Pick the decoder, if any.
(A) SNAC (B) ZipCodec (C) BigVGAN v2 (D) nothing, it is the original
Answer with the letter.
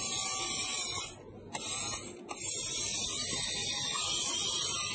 D